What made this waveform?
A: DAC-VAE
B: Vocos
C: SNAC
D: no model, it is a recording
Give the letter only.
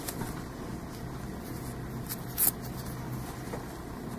D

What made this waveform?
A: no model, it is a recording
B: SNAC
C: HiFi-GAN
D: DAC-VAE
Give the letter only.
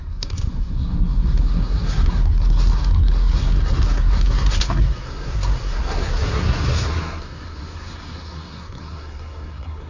B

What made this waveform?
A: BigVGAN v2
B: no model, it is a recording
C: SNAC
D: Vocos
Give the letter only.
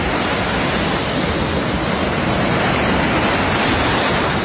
B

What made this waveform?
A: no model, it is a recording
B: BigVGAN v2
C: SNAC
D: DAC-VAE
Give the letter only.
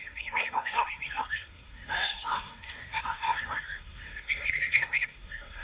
C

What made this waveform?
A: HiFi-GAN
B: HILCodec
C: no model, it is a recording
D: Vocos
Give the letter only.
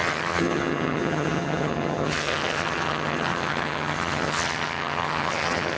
A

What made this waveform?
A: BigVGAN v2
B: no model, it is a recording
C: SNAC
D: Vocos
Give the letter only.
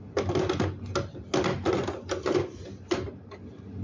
B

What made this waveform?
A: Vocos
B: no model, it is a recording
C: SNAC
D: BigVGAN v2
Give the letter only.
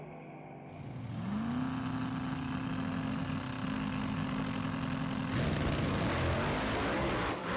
B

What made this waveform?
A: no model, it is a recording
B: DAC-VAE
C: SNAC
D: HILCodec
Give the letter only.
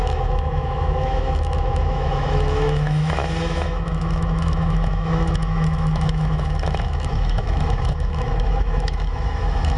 B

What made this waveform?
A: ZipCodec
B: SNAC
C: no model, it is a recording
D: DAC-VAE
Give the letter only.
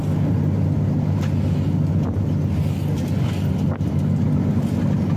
C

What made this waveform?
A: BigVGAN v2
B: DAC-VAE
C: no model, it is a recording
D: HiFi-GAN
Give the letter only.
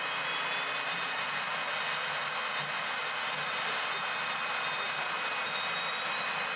C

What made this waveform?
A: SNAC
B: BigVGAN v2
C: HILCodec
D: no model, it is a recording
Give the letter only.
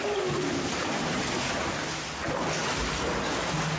D